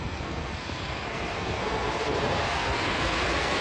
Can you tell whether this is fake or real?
fake